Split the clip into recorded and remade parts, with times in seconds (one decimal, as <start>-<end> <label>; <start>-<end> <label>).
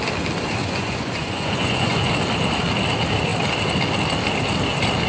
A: 0.0-0.6 recorded; 0.6-2.1 remade; 2.1-5.1 recorded